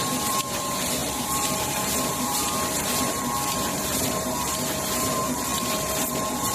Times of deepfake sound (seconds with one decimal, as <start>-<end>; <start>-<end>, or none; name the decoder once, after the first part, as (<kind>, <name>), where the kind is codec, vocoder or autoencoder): 0.0-6.5 (vocoder, BigVGAN v2)